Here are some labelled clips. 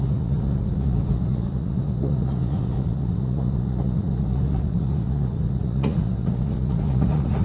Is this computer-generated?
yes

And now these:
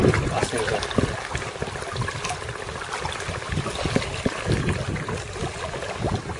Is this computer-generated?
no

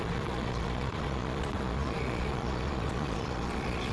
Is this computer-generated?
yes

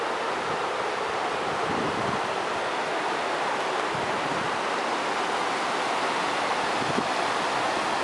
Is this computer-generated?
no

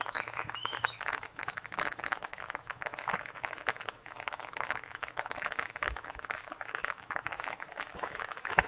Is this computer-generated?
yes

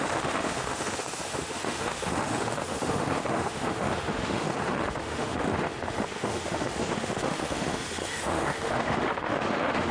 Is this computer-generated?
yes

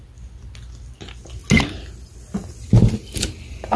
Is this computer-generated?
no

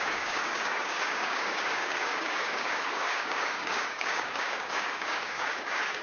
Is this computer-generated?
yes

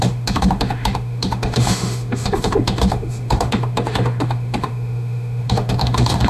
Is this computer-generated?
yes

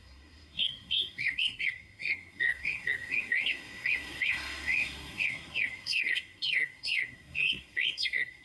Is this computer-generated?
yes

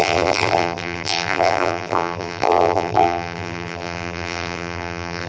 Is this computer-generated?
yes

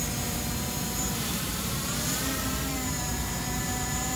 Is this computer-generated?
yes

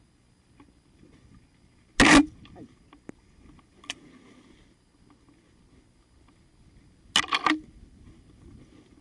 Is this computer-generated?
no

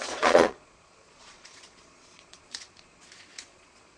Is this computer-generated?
yes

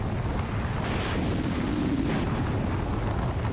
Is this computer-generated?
no